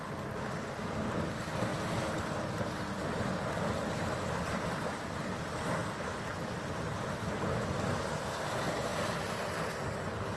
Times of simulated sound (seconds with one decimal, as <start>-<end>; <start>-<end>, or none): none